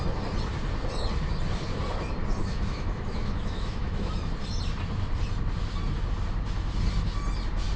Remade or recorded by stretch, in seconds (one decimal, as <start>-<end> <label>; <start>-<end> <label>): 0.0-2.4 recorded; 2.4-4.1 remade; 4.1-7.8 recorded